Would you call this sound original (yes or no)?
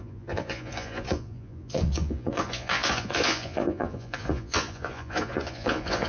no